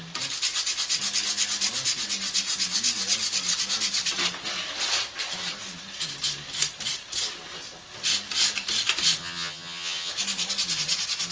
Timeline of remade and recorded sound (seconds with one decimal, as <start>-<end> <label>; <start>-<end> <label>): 0.0-9.2 recorded; 9.2-10.1 remade; 10.1-11.3 recorded